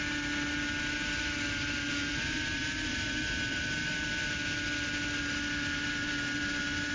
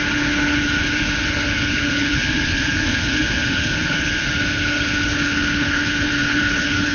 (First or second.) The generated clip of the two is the second